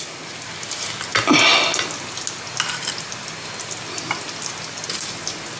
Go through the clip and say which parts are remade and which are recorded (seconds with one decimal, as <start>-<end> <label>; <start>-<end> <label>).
0.0-5.6 recorded